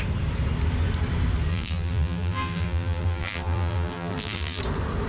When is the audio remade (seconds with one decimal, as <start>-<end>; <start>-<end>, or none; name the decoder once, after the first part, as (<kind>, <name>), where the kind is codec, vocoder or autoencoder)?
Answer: 1.5-4.6 (vocoder, BigVGAN v2)